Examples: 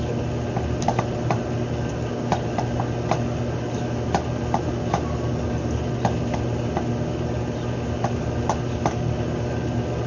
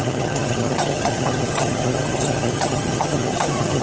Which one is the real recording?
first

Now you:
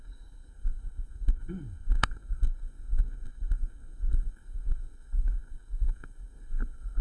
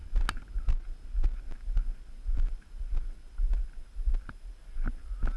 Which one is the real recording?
second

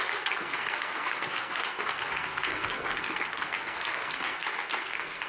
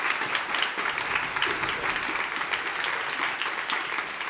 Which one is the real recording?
second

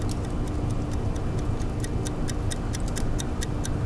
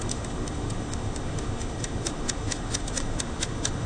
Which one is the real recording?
first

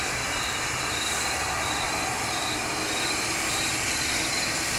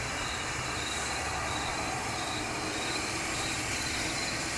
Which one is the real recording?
first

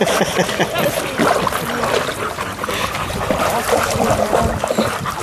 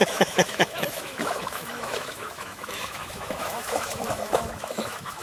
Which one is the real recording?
first